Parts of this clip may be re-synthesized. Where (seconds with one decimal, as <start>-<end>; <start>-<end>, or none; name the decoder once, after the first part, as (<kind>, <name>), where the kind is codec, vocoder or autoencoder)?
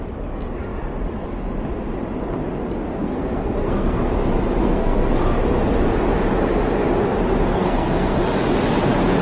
3.0-4.1 (codec, SNAC); 4.6-5.2; 7.5-8.2